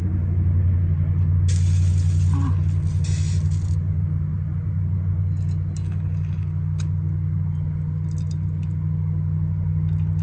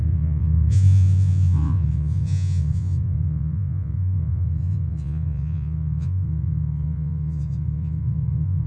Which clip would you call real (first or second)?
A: first